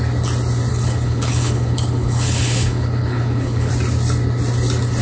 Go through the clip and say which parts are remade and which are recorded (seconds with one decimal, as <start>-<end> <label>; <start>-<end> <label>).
0.0-0.7 recorded; 0.7-3.7 remade; 3.7-5.0 recorded